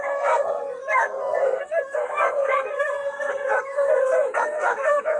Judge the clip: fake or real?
fake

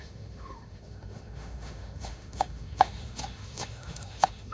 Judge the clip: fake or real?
fake